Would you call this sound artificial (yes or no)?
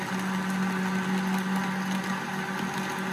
no